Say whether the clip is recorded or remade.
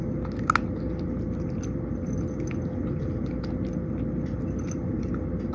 recorded